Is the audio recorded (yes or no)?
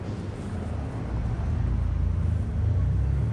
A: yes